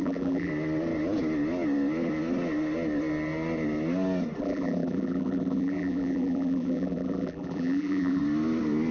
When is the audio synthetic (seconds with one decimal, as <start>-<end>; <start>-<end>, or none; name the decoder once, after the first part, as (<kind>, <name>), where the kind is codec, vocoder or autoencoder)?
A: 0.0-0.5 (vocoder, BigVGAN v2); 4.4-8.2